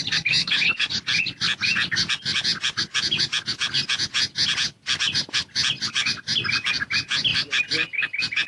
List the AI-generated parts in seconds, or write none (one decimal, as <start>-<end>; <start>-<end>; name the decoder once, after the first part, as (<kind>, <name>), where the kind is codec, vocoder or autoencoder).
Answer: 0.4-1.0 (codec, HILCodec)